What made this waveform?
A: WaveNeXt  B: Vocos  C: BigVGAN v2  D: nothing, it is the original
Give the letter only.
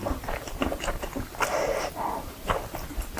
D